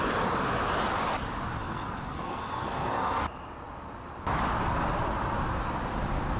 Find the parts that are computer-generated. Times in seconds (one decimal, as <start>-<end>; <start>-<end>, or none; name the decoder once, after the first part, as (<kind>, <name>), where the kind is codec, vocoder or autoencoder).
1.6-3.2 (codec, SNAC)